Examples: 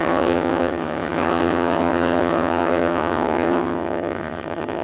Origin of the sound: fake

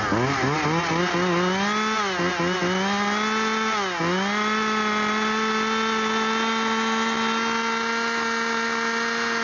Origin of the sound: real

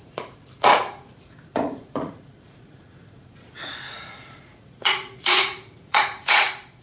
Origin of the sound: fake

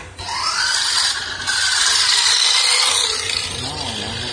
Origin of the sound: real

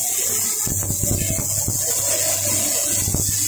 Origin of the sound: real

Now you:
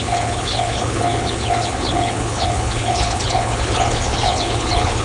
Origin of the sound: fake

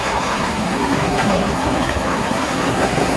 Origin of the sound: fake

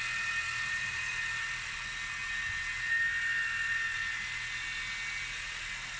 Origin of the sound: real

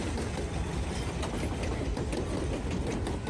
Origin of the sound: real